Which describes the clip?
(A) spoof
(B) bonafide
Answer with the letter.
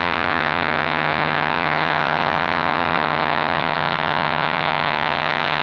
A